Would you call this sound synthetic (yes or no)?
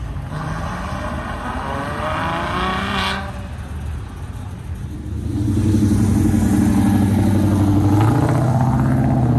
no